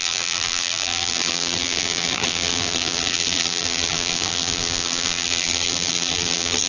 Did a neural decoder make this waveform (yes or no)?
yes